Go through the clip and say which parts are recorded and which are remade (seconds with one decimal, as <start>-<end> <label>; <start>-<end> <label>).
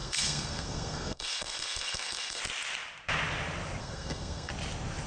0.0-2.4 remade; 2.4-3.8 recorded; 3.8-4.5 remade; 4.5-5.1 recorded